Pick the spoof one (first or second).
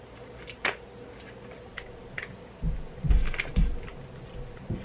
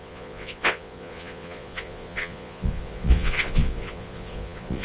second